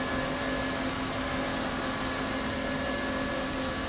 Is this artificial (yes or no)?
no